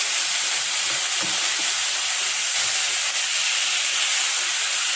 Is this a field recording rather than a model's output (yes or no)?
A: yes